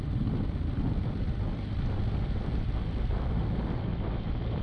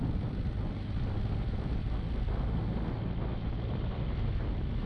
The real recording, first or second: second